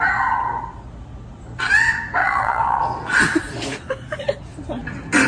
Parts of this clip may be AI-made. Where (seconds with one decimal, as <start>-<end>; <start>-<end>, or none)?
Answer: 2.2-2.8